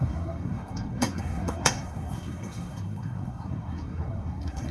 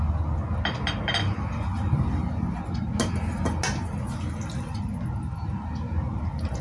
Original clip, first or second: second